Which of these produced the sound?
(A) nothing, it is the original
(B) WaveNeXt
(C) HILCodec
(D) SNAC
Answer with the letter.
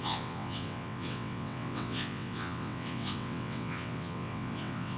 B